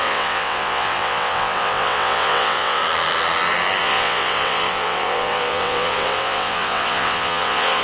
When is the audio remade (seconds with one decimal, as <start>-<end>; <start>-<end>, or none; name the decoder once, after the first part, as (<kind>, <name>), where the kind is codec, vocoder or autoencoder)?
0.0-2.8 (vocoder, WaveNeXt); 3.8-7.8